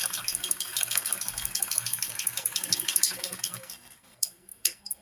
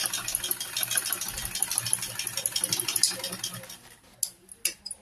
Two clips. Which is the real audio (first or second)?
second